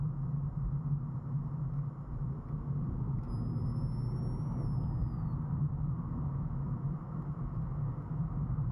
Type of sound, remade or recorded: recorded